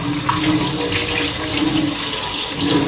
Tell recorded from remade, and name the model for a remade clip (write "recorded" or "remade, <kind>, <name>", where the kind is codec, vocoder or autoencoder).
recorded